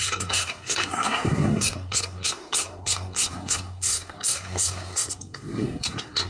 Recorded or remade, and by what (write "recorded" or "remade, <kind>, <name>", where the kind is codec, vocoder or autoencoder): remade, codec, SNAC